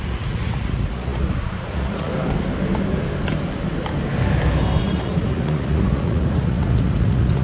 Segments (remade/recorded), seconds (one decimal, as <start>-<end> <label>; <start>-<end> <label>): 0.0-2.1 remade; 2.1-4.8 recorded; 4.8-7.4 remade